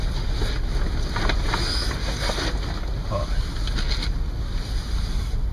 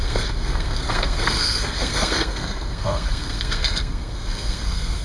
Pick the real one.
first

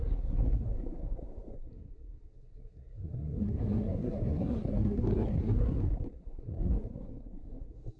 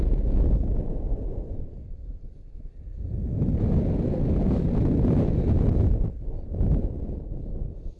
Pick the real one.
second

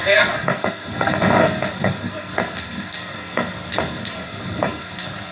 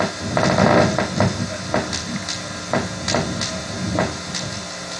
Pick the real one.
second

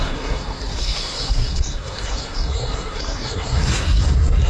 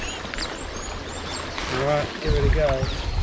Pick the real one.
second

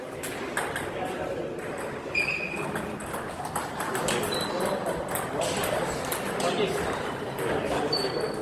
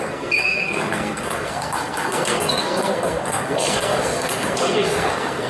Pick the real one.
first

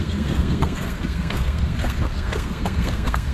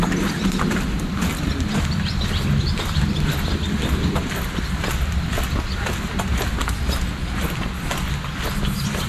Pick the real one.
second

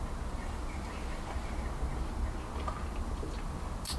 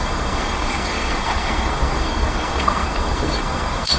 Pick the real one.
first